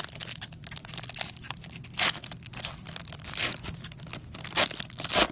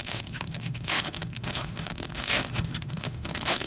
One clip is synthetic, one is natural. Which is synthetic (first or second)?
second